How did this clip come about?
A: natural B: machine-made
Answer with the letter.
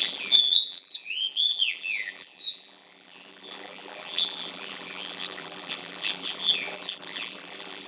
B